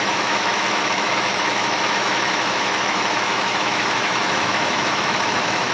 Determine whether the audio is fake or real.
fake